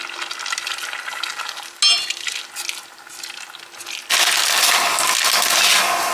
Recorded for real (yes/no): yes